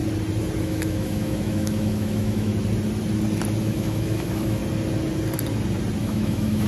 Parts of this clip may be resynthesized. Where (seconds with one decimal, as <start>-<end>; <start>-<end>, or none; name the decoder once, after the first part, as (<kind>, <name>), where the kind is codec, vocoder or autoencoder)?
0.6-2.5 (autoencoder, DAC-VAE); 3.6-4.6; 6.0-6.7